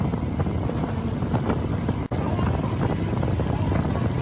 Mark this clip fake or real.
real